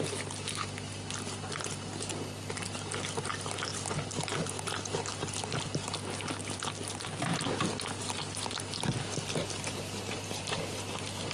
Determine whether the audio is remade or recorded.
recorded